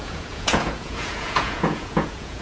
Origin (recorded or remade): remade